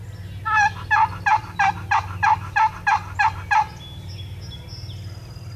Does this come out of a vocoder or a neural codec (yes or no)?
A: no